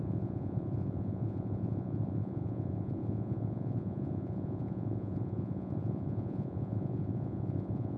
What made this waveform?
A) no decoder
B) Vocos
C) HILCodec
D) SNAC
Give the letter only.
B